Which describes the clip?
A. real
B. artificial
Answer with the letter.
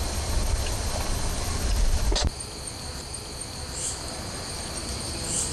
A